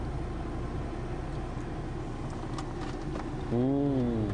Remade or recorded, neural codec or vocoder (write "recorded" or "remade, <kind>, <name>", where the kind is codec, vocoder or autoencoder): recorded